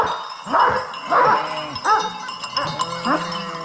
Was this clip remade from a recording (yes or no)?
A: no